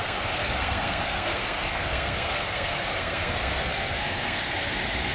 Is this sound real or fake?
fake